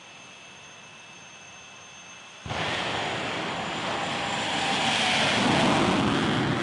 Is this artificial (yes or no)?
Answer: no